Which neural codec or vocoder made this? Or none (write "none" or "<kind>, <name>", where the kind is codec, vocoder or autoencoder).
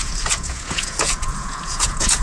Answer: vocoder, Vocos